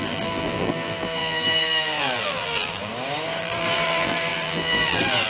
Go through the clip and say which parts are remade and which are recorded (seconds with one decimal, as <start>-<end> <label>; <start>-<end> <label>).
0.0-2.9 remade; 2.9-3.4 recorded; 3.4-5.3 remade